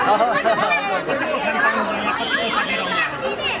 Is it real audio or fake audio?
real